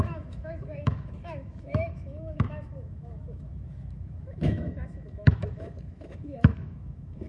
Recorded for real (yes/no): no